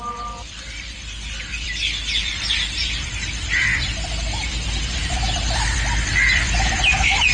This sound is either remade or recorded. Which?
remade